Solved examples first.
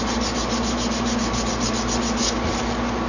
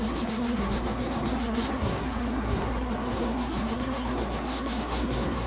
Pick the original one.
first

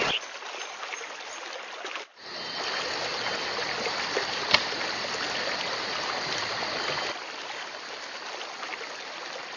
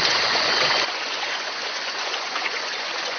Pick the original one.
first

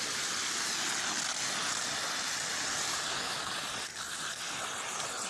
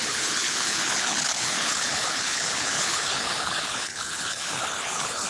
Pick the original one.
first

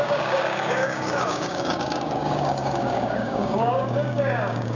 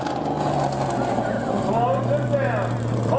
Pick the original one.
second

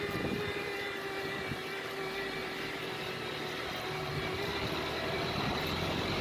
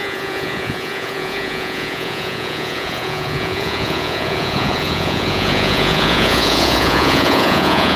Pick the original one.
first